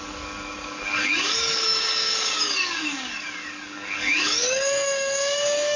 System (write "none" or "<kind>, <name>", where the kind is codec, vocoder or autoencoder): codec, DAC